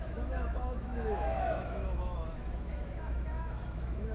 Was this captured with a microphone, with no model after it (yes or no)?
no